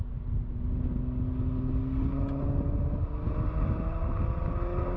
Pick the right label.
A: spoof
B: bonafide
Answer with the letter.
B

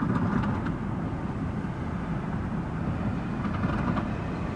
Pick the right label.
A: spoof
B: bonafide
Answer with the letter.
B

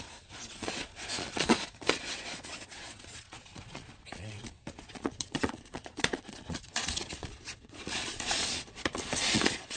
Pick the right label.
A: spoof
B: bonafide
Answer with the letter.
A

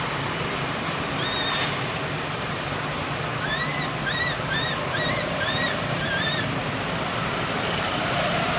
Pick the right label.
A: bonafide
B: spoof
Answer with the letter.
A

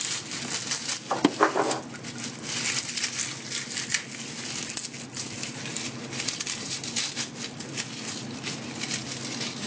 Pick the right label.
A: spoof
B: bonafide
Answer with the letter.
B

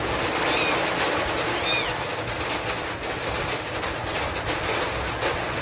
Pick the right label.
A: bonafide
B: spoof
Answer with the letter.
A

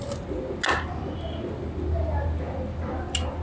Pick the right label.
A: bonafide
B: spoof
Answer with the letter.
A